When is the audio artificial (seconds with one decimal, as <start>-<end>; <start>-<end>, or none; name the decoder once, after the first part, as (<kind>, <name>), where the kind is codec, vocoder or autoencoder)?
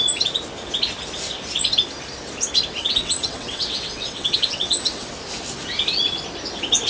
2.8-5.1 (vocoder, WaveNeXt)